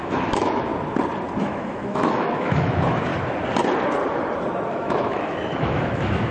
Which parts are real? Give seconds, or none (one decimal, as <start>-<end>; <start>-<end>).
0.7-1.4; 3.1-4.7